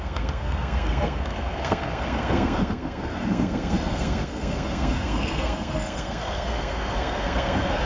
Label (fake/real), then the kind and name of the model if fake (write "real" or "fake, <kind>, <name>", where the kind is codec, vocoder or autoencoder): fake, codec, SNAC